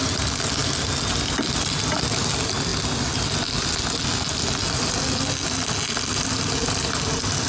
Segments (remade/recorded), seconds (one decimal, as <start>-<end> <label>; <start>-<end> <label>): 0.0-7.5 recorded